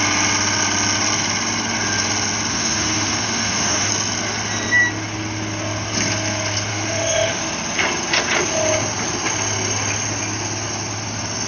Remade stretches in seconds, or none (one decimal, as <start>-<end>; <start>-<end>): 2.5-3.9; 6.7-7.4